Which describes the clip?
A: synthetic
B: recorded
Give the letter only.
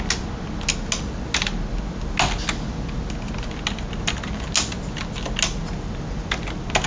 B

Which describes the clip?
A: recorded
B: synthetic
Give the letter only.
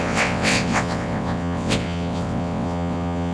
B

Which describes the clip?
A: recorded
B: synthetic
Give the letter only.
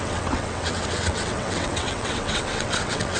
B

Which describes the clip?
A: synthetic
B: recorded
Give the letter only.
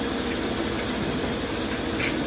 B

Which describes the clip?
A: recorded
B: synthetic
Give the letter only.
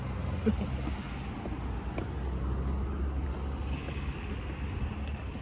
A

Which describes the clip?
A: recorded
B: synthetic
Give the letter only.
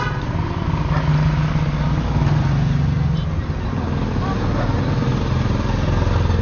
A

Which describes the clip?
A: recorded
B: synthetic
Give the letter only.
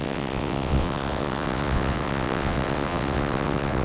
B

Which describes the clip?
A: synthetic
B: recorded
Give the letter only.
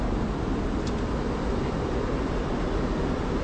B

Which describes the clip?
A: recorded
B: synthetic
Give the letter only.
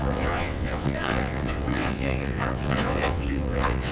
B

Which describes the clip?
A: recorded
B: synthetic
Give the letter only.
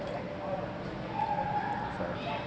A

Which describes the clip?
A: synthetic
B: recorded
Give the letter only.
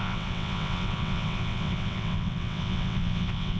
A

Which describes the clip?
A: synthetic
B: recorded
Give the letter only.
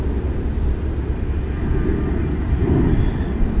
B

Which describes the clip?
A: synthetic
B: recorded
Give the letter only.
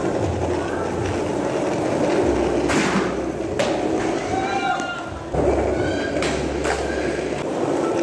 B